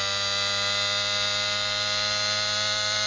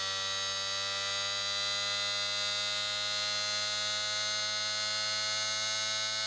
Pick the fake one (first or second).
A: first